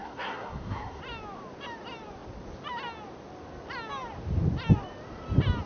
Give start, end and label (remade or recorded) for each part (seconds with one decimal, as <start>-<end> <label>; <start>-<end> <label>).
0.0-1.0 remade; 1.0-5.7 recorded